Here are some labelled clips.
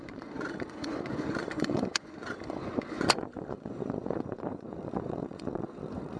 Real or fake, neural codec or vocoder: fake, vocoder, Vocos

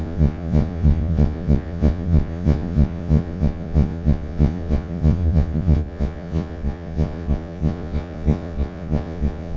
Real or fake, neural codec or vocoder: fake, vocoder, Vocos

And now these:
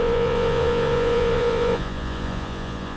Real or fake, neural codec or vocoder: fake, vocoder, Vocos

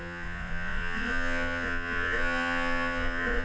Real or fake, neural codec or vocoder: fake, vocoder, Vocos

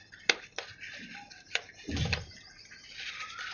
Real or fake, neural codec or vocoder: real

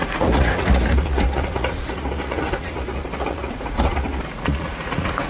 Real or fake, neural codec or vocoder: fake, vocoder, Vocos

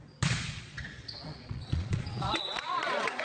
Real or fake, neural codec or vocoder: fake, vocoder, Vocos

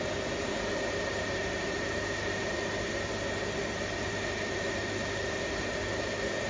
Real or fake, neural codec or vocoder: real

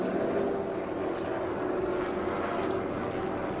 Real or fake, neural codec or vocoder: real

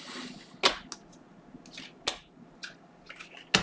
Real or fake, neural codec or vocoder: real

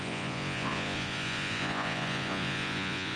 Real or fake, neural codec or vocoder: fake, vocoder, Vocos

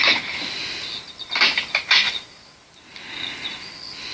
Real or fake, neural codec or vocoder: real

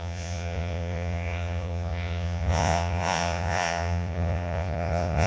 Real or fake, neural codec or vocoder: fake, vocoder, Vocos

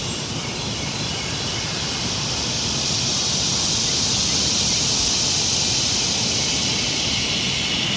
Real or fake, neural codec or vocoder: real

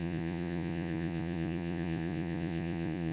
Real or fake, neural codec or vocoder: fake, vocoder, Vocos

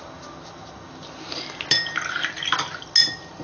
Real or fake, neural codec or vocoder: real